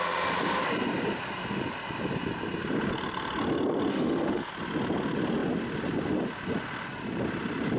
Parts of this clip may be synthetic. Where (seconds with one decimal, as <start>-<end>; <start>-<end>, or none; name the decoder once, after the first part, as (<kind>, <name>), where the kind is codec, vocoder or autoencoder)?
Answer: 3.9-4.5 (autoencoder, DAC-VAE)